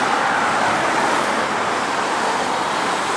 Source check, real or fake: real